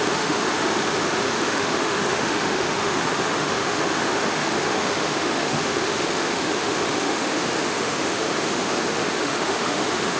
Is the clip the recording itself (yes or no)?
no